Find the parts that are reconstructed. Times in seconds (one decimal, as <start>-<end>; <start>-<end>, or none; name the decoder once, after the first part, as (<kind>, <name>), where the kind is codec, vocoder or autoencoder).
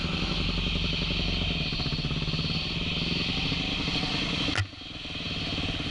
none